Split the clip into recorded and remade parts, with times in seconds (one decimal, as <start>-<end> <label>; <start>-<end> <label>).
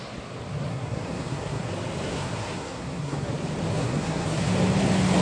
0.0-0.7 recorded; 0.7-1.7 remade; 1.7-2.1 recorded; 2.1-3.3 remade; 3.3-3.7 recorded; 3.7-4.5 remade; 4.5-5.2 recorded